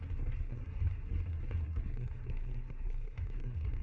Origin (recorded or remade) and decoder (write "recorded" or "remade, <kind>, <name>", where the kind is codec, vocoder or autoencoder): remade, codec, SNAC